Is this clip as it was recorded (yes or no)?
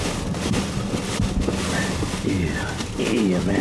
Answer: yes